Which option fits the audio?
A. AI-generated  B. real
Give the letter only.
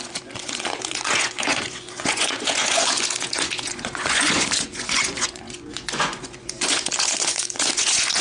A